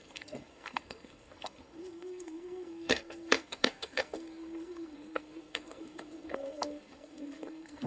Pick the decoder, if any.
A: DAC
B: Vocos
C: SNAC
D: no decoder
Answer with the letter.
C